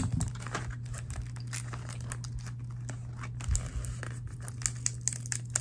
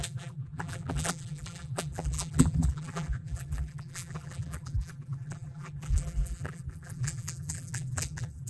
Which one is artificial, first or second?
second